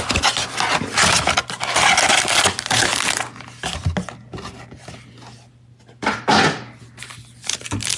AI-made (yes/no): no